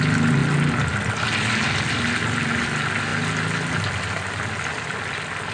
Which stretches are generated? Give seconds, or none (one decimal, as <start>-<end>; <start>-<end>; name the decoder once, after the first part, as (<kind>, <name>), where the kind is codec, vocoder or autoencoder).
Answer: none